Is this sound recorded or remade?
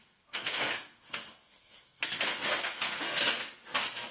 remade